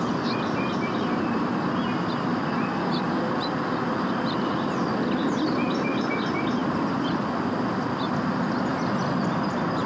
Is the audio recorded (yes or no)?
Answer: yes